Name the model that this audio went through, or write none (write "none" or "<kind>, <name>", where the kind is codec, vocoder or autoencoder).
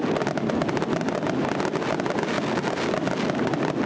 none